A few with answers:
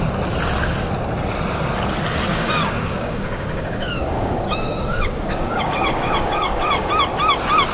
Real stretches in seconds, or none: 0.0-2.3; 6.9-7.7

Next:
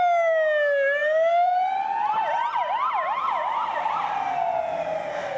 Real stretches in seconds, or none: 0.0-1.0; 3.9-5.4

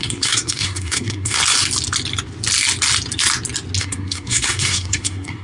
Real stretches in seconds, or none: 1.4-3.8